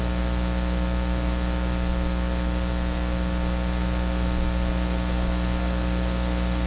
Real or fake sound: real